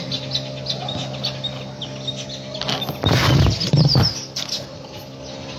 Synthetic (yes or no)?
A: no